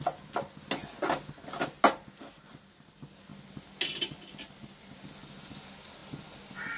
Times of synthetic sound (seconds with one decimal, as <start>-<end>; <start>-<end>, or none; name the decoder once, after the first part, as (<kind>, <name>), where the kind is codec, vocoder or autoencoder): none